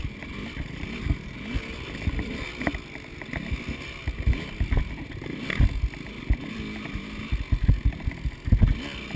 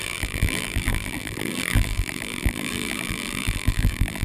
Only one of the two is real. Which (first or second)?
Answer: first